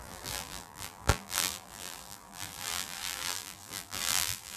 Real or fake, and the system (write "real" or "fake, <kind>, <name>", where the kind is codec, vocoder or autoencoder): fake, vocoder, BigVGAN v2